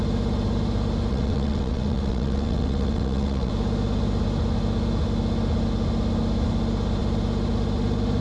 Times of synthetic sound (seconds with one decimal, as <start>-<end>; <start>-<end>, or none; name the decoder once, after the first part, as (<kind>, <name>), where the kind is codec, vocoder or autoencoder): 1.1-3.5 (vocoder, WaveNeXt)